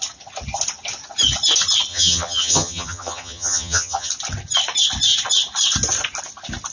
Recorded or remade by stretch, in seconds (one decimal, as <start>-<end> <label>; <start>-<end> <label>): 0.0-1.9 recorded; 1.9-4.1 remade; 4.1-6.7 recorded